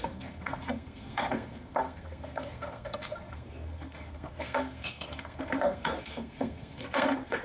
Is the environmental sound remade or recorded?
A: remade